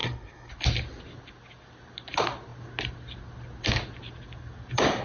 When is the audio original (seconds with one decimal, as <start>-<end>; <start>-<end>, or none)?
0.5-5.0